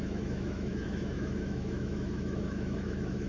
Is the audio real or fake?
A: fake